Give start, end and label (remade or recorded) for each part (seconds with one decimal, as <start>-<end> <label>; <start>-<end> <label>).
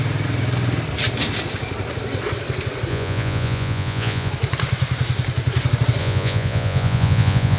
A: 0.0-2.9 recorded; 2.9-4.3 remade; 4.3-6.0 recorded; 6.0-7.6 remade